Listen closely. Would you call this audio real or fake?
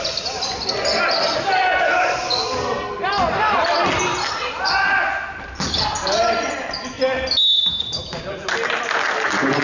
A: real